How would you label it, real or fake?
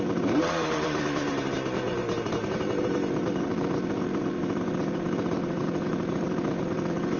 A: fake